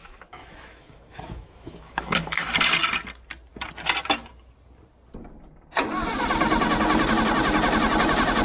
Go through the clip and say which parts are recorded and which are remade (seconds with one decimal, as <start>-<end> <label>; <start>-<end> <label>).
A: 0.0-2.5 remade; 2.5-8.4 recorded